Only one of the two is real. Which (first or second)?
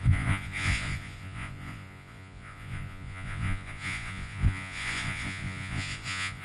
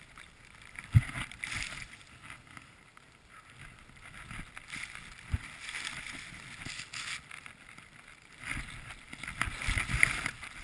second